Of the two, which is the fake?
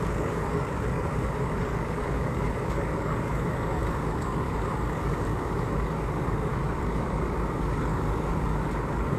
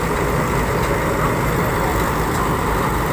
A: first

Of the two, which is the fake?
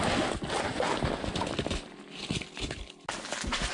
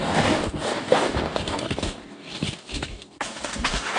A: second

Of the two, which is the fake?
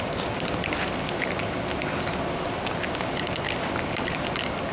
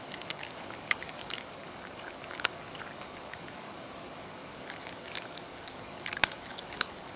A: second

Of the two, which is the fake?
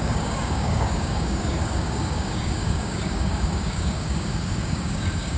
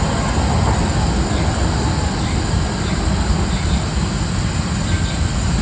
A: first